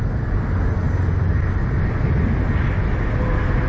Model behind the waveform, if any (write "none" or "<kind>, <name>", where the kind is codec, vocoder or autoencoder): none